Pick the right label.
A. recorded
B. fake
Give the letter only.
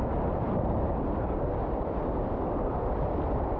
A